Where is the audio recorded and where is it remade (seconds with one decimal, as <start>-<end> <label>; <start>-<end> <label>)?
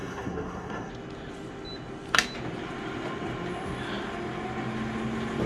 0.0-0.9 remade; 0.9-5.5 recorded